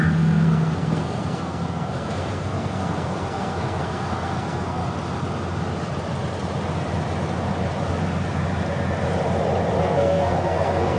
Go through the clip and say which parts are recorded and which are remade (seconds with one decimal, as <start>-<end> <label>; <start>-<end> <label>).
0.0-4.8 remade; 4.8-9.8 recorded; 9.8-11.0 remade